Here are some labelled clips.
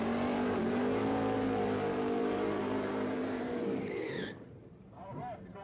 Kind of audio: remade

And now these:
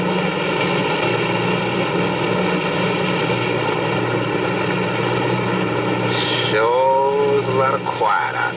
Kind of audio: recorded